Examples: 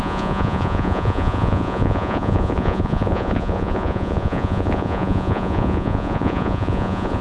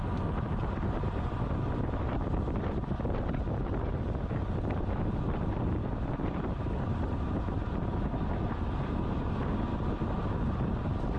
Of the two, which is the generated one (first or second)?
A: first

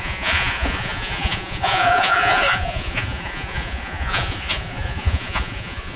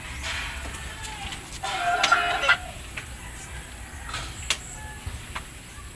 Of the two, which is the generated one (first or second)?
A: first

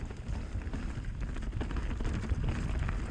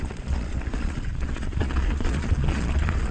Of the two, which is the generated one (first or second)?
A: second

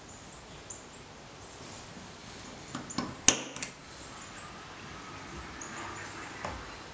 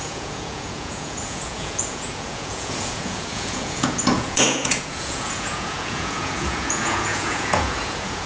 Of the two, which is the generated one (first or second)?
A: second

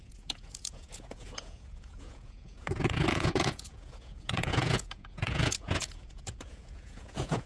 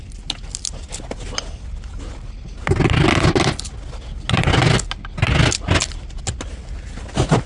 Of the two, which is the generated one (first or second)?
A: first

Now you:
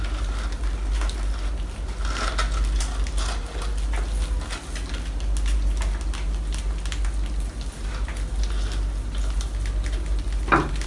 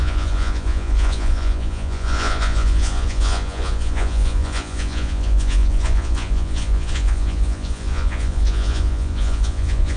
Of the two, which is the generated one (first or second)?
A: second